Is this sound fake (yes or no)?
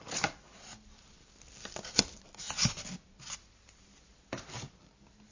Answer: no